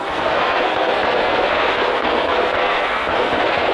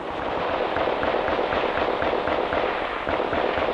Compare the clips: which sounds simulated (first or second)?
first